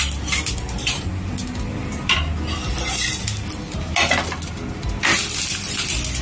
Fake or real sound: real